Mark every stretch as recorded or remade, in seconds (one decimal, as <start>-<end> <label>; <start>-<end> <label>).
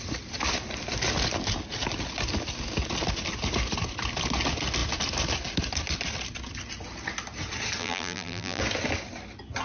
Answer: 0.0-7.8 recorded; 7.8-8.6 remade; 8.6-9.6 recorded